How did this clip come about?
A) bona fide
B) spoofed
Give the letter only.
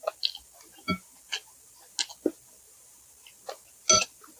A